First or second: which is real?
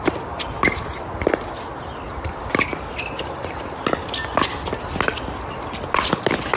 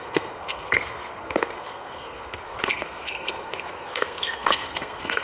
first